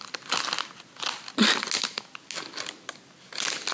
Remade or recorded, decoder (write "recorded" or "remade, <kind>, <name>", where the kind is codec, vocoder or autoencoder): recorded